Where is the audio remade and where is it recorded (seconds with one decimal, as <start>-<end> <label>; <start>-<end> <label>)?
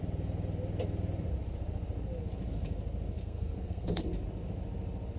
0.0-3.2 recorded; 3.2-4.0 remade; 4.0-5.2 recorded